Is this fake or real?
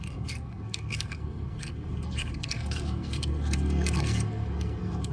fake